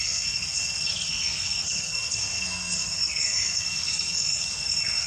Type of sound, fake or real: fake